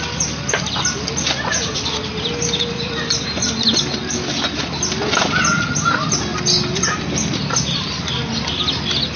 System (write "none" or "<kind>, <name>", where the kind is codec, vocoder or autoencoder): none